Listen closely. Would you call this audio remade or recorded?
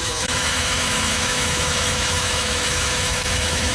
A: remade